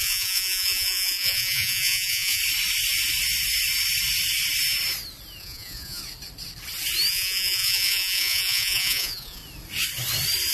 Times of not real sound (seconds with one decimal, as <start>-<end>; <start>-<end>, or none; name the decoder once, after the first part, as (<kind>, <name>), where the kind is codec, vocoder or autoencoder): 0.0-2.4 (vocoder, Vocos); 5.4-6.0; 7.1-9.4